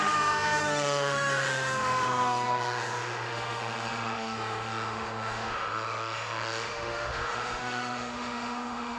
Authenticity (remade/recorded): remade